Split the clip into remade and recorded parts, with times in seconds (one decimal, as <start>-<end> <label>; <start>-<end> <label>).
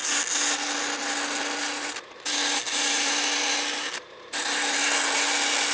0.0-5.7 recorded